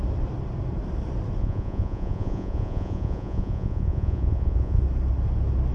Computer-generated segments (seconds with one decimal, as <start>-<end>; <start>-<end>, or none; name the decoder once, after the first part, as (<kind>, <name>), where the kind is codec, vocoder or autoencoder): 1.4-4.8 (vocoder, Vocos)